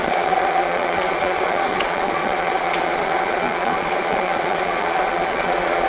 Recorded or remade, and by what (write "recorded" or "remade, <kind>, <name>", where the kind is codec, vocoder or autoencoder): remade, vocoder, Vocos